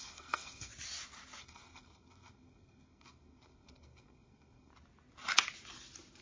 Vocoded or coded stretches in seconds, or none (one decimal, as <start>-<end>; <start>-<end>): 0.0-0.7; 1.4-4.7